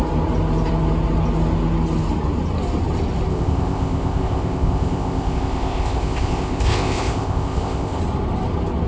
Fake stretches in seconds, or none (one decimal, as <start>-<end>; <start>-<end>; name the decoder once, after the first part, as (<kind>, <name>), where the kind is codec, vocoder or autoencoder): 3.3-8.0 (codec, ZipCodec)